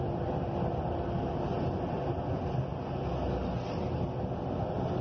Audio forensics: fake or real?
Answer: real